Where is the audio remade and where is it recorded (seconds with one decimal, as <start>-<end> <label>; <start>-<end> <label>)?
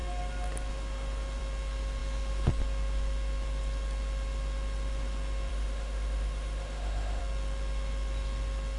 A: 0.0-5.5 recorded; 5.5-7.2 remade; 7.2-8.8 recorded